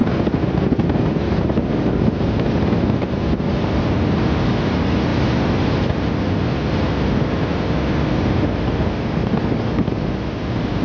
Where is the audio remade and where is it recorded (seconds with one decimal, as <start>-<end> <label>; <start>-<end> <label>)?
0.0-10.8 recorded